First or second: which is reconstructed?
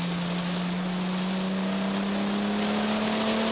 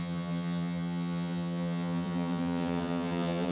second